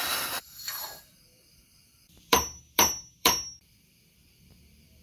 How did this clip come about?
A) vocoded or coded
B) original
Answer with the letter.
A